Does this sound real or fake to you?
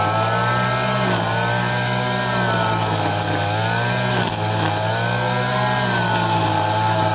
real